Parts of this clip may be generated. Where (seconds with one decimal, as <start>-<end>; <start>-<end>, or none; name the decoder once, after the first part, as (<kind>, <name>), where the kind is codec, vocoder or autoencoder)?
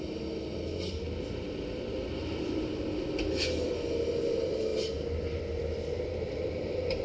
none